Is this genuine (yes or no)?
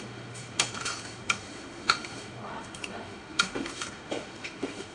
no